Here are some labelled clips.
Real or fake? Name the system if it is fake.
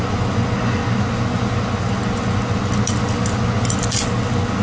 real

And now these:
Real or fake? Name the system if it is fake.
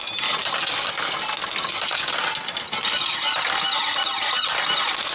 real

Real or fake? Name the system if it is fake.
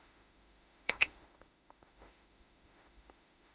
fake, autoencoder, DAC-VAE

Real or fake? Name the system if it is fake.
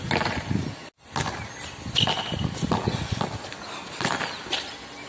real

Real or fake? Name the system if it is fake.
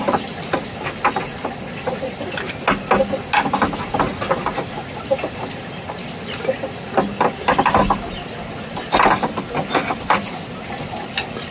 real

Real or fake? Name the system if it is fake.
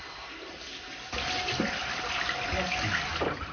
real